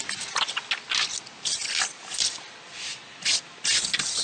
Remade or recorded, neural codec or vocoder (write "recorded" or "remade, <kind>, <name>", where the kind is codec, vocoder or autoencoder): recorded